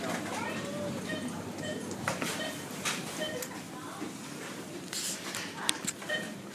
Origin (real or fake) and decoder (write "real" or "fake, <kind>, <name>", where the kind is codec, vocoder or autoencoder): fake, vocoder, BigVGAN v2